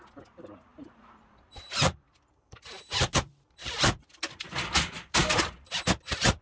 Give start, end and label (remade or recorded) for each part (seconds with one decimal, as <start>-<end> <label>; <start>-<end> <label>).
0.0-0.7 recorded; 0.7-4.5 remade; 4.5-6.4 recorded

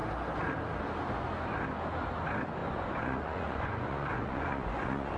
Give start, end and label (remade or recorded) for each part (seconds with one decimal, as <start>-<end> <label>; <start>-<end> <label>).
0.0-2.6 recorded; 2.6-5.2 remade

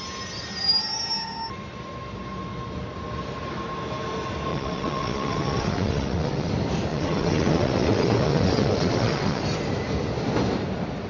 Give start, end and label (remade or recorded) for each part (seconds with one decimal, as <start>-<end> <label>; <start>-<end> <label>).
0.0-4.5 recorded; 4.5-6.5 remade; 6.5-6.9 recorded; 6.9-9.4 remade; 9.4-11.1 recorded

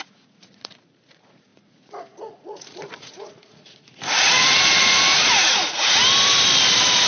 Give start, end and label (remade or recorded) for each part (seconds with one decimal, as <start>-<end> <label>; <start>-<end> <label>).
0.0-6.0 remade; 6.0-7.1 recorded

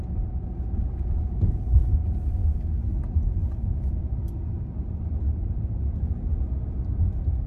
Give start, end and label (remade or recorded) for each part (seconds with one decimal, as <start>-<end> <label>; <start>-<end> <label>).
0.0-7.5 recorded